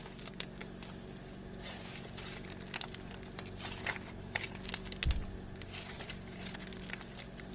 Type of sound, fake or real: real